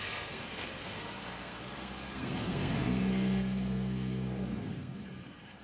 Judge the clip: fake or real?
fake